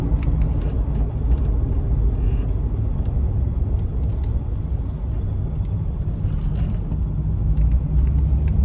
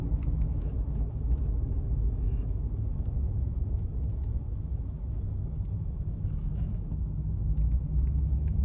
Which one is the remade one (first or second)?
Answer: second